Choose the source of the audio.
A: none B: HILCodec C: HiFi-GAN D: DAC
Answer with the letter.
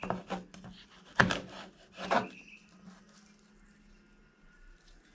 A